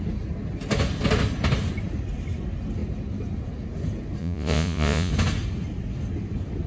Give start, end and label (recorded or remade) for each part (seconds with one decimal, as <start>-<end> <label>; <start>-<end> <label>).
0.0-4.2 recorded; 4.2-5.1 remade; 5.1-6.7 recorded